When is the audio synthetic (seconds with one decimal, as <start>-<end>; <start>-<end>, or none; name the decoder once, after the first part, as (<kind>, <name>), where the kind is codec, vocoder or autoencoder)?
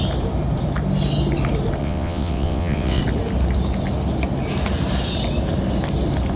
1.8-3.0 (vocoder, WaveNeXt)